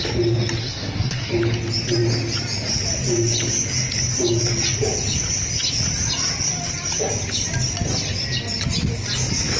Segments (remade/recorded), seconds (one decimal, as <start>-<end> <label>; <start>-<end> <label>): 0.0-0.6 recorded; 0.6-1.3 remade; 1.3-9.6 recorded